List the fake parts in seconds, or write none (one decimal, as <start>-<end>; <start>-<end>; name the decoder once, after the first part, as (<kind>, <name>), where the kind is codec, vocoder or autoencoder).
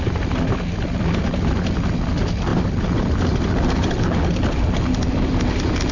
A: none